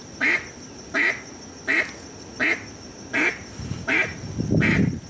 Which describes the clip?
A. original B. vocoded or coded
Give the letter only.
A